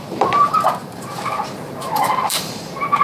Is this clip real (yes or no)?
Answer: no